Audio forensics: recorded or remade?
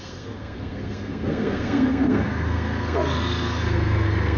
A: remade